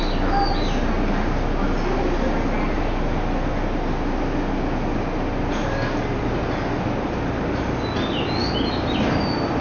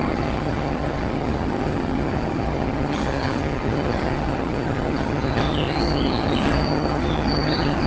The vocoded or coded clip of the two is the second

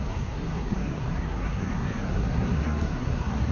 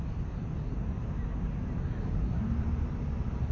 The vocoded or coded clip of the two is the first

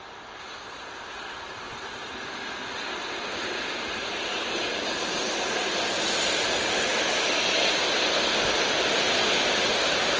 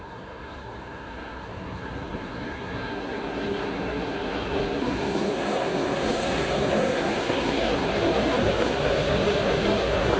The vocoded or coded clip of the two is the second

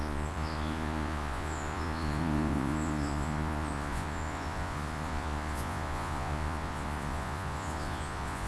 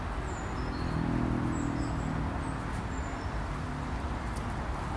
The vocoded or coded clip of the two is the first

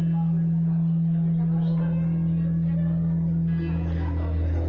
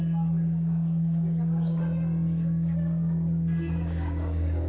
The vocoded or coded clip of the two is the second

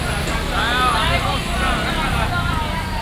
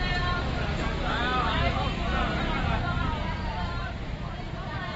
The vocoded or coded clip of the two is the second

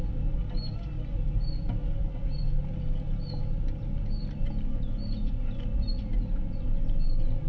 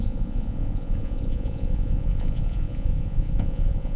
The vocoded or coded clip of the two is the second